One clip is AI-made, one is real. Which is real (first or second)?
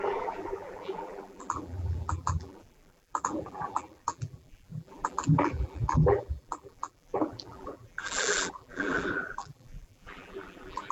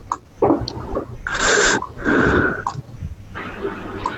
second